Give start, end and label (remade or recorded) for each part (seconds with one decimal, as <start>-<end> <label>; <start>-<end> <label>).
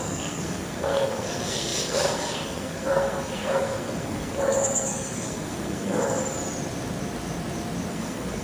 0.0-6.2 remade; 6.2-7.9 recorded; 7.9-8.4 remade